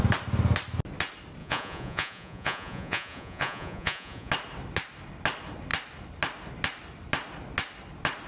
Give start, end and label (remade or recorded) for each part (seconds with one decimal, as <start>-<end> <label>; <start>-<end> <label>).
0.0-1.4 recorded; 1.4-4.3 remade; 4.3-8.3 recorded